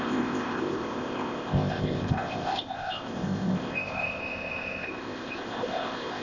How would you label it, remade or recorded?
remade